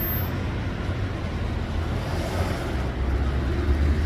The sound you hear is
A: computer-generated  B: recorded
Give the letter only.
B